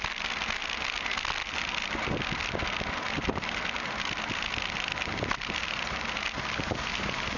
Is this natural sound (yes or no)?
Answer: yes